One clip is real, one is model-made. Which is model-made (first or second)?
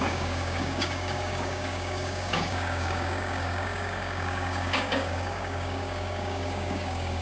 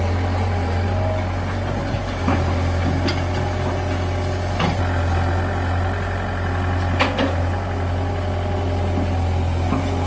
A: first